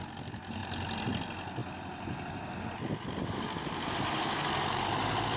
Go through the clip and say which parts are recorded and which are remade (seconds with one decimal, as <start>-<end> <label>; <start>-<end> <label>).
0.0-5.4 recorded